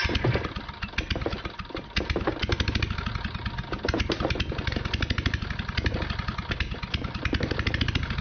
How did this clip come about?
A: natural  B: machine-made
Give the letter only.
A